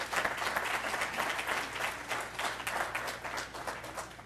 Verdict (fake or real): real